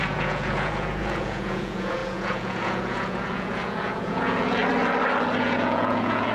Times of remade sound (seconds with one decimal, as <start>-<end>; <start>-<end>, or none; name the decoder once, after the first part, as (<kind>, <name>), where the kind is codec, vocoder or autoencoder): 0.0-4.6 (vocoder, Vocos); 5.4-6.3